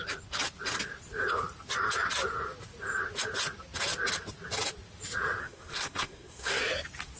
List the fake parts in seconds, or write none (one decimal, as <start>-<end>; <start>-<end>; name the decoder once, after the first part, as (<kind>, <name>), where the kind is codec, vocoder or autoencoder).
5.4-6.6 (codec, SNAC)